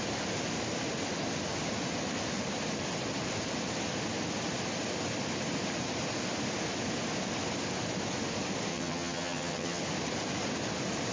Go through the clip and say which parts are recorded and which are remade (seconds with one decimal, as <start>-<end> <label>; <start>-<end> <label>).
0.0-8.7 recorded; 8.7-9.8 remade; 9.8-11.1 recorded